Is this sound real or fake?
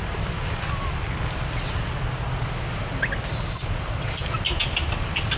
real